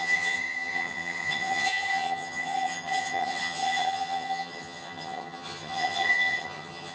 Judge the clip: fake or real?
fake